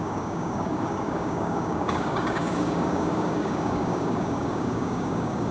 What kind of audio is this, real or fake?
fake